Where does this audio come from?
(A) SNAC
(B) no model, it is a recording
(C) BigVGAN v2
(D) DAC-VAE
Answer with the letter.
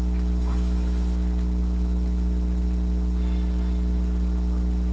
B